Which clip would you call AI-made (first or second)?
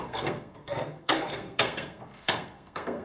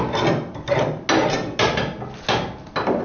first